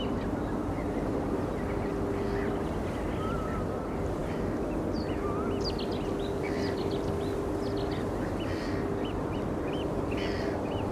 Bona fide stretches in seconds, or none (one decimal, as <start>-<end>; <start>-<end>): 0.6-1.1; 1.9-2.6; 4.2-6.4